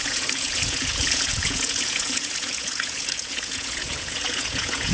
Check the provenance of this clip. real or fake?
fake